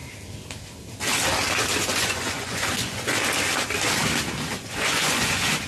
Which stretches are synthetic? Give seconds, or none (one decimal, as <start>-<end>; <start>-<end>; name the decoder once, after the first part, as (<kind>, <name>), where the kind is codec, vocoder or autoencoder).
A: 1.8-3.1 (vocoder, Vocos); 4.6-5.7